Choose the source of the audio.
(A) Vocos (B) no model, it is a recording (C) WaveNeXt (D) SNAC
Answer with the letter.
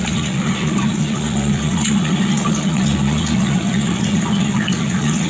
A